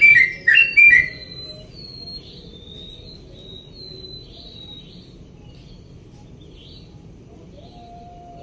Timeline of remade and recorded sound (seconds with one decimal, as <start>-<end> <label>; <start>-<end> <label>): 0.0-8.4 recorded